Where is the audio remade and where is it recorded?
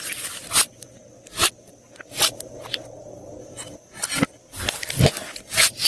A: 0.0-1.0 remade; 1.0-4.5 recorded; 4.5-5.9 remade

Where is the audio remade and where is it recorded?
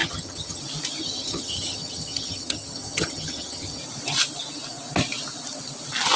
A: 0.0-0.6 remade; 0.6-1.0 recorded; 1.0-3.8 remade; 3.8-6.2 recorded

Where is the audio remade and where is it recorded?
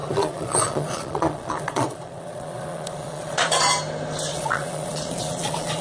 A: 0.0-3.5 remade; 3.5-4.3 recorded; 4.3-5.8 remade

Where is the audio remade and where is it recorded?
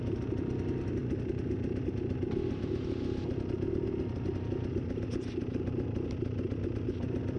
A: 0.0-7.4 recorded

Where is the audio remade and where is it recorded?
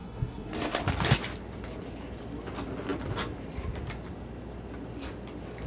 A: 0.0-0.8 remade; 0.8-5.7 recorded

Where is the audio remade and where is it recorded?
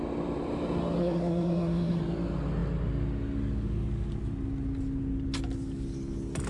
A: 0.0-1.0 recorded; 1.0-2.0 remade; 2.0-6.5 recorded